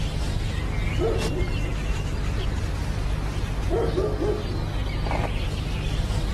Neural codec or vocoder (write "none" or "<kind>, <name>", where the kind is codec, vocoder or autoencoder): none